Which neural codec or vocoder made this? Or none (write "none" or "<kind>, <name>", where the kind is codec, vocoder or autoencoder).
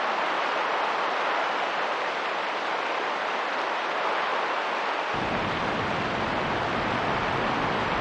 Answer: none